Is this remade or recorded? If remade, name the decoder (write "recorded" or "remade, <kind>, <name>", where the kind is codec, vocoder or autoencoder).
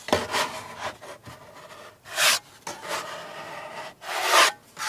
recorded